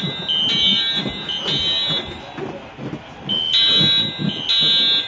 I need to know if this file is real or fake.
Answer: real